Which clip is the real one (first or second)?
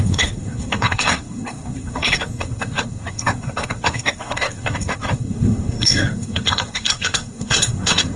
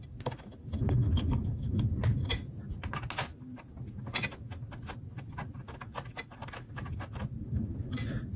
second